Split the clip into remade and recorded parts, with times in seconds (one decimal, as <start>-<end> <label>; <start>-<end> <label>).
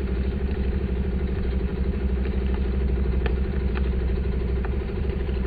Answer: 0.0-5.5 remade